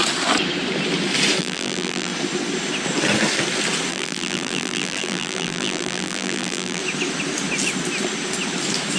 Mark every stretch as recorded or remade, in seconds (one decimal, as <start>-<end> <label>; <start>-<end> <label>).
0.0-1.4 recorded; 1.4-2.1 remade; 2.1-3.9 recorded; 3.9-6.8 remade; 6.8-9.0 recorded